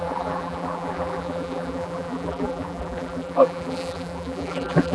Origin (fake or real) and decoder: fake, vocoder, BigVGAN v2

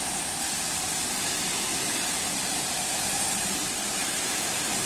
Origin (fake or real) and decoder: fake, vocoder, BigVGAN v2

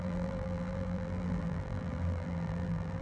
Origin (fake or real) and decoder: fake, vocoder, BigVGAN v2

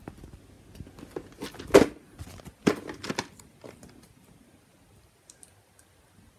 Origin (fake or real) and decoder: real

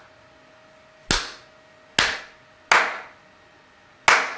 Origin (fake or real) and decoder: real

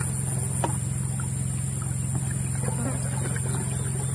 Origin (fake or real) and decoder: real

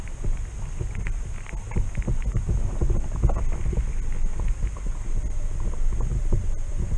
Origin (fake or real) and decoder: real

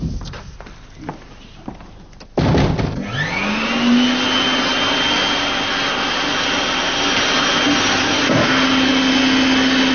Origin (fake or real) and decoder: real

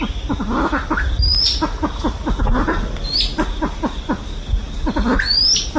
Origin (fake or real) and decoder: real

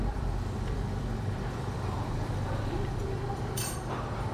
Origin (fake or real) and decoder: fake, vocoder, BigVGAN v2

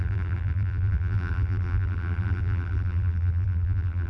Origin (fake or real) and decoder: fake, vocoder, BigVGAN v2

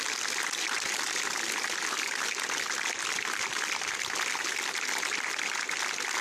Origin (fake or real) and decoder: real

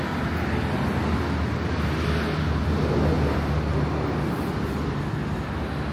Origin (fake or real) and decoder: real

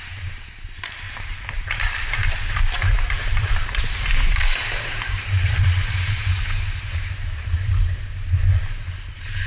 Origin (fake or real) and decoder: fake, vocoder, BigVGAN v2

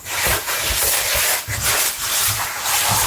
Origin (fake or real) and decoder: fake, vocoder, BigVGAN v2